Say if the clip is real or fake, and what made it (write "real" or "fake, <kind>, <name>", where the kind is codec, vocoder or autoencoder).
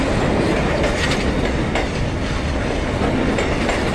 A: real